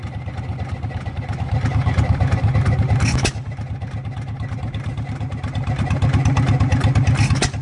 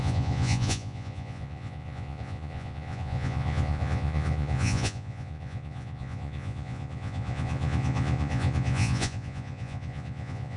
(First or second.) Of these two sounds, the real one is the first